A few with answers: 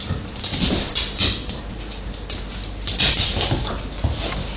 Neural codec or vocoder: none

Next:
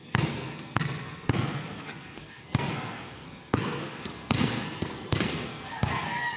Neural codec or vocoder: codec, SNAC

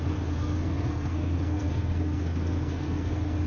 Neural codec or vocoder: codec, SNAC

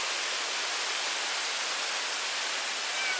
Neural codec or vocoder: none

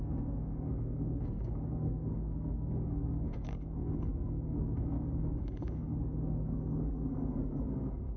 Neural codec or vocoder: codec, SNAC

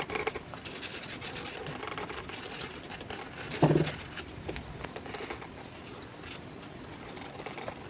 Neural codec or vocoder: none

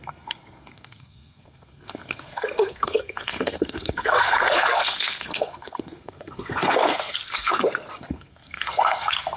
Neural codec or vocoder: codec, SNAC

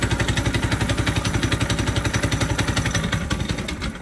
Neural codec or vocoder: none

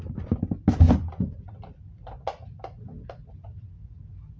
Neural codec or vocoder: none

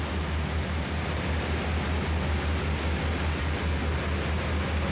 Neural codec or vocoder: none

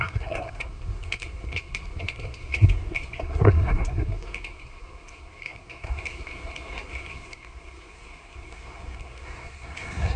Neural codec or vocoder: codec, SNAC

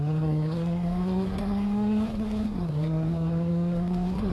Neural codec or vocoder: codec, SNAC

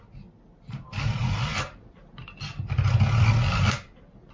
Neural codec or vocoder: none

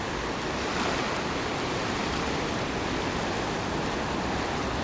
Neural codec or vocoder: none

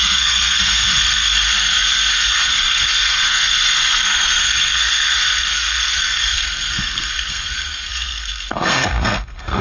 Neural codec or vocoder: codec, SNAC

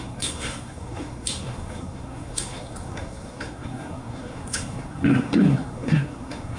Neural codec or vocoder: codec, SNAC